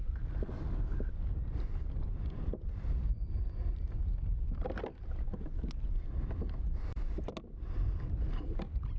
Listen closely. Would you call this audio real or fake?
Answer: real